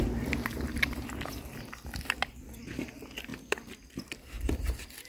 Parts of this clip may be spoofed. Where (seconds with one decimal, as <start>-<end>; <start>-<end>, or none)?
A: none